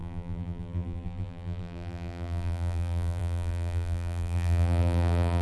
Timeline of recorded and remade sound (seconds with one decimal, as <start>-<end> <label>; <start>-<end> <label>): 0.0-5.4 remade